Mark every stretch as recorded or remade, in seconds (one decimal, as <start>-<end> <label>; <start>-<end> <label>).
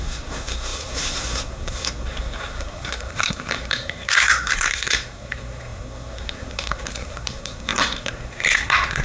0.0-9.0 remade